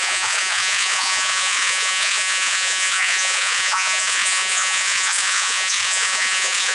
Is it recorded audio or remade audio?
remade